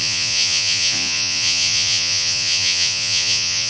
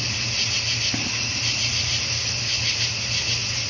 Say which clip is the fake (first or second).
first